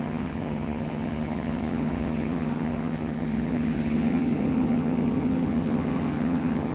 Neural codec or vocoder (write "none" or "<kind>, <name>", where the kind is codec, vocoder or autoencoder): vocoder, HiFi-GAN